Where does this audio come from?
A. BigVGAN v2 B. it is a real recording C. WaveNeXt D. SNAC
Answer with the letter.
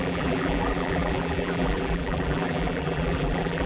A